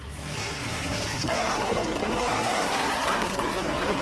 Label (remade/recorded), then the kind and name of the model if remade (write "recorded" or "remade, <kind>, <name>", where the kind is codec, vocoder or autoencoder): remade, codec, SNAC